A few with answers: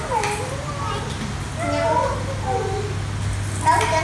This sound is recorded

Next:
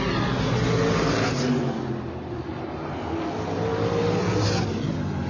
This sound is recorded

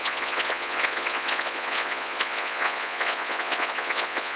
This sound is remade